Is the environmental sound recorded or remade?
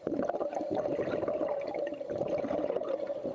recorded